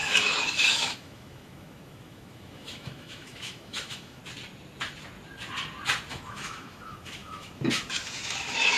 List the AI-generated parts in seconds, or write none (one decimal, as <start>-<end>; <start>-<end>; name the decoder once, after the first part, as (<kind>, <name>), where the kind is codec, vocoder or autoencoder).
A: 0.0-4.2 (autoencoder, DAC-VAE); 6.1-8.8